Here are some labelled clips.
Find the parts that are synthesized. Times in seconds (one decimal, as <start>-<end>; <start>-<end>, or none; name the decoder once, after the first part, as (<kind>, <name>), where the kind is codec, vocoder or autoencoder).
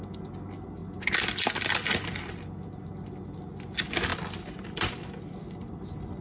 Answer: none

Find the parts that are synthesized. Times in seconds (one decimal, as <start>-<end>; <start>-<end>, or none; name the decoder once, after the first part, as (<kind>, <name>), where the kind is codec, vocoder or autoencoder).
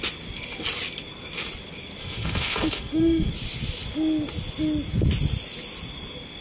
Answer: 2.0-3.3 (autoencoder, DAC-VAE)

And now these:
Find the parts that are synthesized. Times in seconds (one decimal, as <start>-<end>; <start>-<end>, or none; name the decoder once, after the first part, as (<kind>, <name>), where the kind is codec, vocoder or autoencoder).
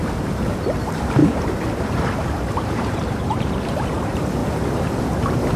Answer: 0.0-1.2 (vocoder, BigVGAN v2); 2.7-4.4; 5.0-5.6